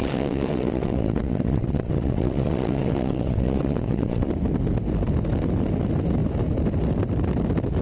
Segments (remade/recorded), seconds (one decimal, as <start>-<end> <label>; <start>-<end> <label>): 0.0-4.3 remade; 4.3-7.8 recorded